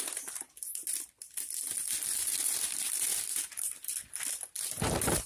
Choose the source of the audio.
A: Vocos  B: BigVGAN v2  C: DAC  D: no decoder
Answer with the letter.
D